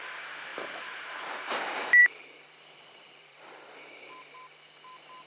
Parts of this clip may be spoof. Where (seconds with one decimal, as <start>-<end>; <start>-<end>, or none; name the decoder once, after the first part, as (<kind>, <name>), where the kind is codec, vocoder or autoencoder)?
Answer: 0.5-1.6 (vocoder, BigVGAN v2); 2.0-4.1